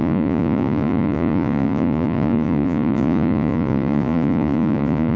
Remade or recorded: remade